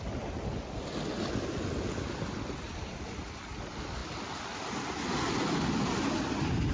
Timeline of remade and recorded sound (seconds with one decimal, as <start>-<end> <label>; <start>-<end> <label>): 0.0-6.7 recorded